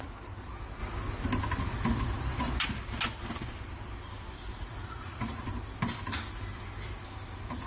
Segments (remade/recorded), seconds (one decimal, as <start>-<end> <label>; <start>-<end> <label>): 0.0-4.5 recorded; 4.5-5.5 remade; 5.5-7.7 recorded